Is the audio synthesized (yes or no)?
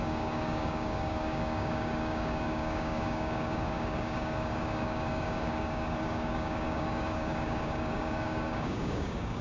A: yes